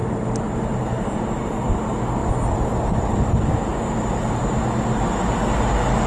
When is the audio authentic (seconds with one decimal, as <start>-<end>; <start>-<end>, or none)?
1.1-3.7; 4.6-6.1